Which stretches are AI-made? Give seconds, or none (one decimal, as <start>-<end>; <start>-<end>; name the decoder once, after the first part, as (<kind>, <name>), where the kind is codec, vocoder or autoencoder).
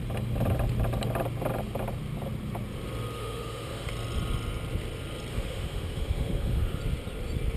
3.2-3.9 (autoencoder, DAC-VAE); 5.3-6.8